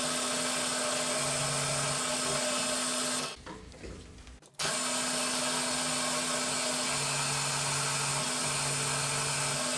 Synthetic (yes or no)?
no